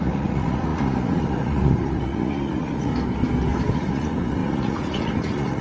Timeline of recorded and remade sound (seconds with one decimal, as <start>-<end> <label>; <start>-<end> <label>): 0.0-2.9 remade; 2.9-3.7 recorded; 3.7-5.6 remade